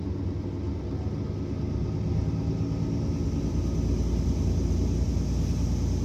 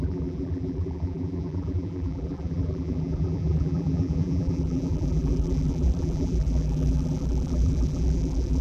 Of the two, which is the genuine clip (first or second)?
first